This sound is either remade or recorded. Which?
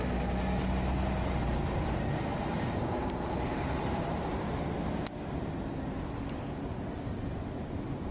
recorded